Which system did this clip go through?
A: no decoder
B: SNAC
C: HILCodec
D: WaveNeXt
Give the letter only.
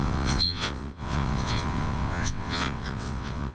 D